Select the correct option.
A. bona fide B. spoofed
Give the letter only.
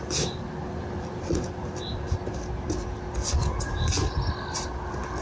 A